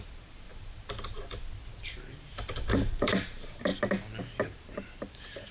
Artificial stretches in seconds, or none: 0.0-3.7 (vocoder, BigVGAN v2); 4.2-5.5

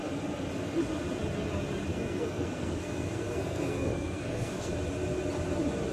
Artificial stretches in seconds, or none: 1.9-4.7 (codec, SNAC)

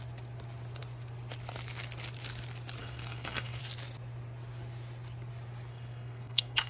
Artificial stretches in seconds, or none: 2.8-3.6 (codec, SNAC); 5.7-6.7

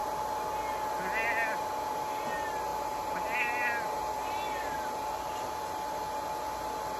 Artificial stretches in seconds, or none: none

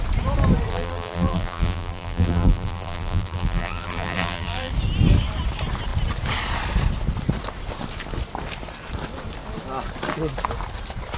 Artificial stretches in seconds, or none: 0.7-4.7 (vocoder, BigVGAN v2)